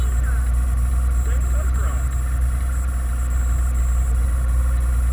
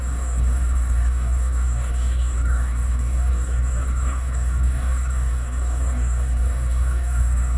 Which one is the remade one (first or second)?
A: second